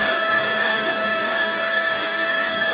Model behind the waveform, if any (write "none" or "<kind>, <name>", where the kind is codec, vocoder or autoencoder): codec, DAC